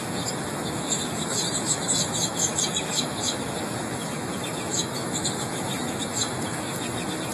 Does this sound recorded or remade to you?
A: remade